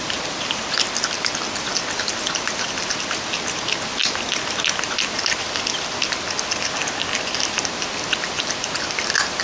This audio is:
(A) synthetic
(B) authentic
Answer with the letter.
B